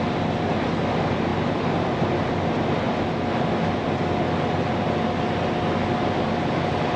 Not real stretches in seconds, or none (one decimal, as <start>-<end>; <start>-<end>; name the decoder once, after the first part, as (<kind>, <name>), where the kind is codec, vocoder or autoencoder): 1.3-2.0 (vocoder, BigVGAN v2)